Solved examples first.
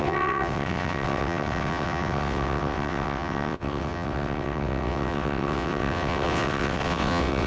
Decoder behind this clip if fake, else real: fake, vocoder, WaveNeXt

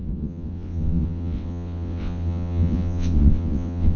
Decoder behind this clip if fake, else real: fake, vocoder, WaveNeXt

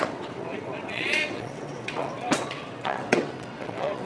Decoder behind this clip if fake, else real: fake, vocoder, WaveNeXt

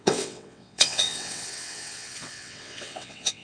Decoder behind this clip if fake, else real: fake, vocoder, WaveNeXt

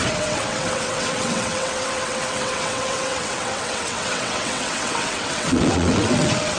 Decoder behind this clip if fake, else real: fake, vocoder, WaveNeXt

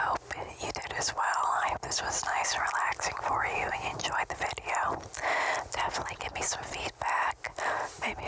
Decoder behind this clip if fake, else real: real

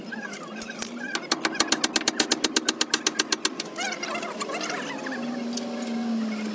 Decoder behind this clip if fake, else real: real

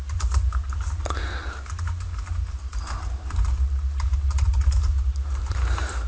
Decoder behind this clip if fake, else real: real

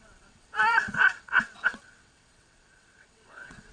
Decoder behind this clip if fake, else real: fake, vocoder, WaveNeXt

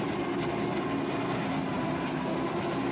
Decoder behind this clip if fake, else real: real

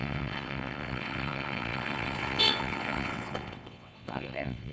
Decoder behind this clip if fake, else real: fake, vocoder, WaveNeXt